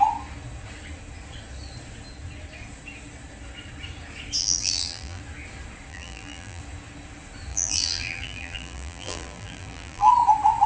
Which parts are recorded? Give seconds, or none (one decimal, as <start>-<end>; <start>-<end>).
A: 0.0-4.4; 5.2-5.9; 6.6-7.5; 10.1-10.7